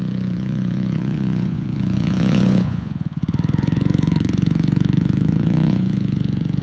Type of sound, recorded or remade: remade